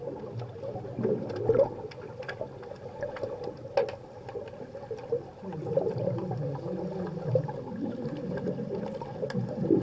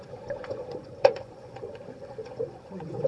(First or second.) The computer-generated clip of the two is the second